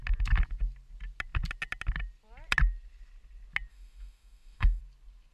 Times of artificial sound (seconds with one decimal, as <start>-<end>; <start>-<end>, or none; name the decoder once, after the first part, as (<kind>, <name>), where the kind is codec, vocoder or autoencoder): 3.7-4.8 (autoencoder, DAC-VAE)